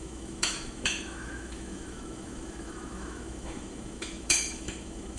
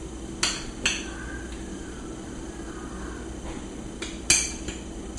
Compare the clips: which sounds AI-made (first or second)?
first